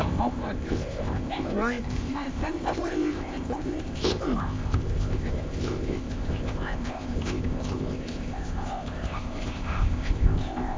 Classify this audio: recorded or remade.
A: remade